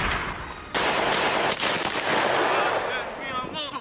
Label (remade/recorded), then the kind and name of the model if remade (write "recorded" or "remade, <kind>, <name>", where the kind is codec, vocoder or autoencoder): recorded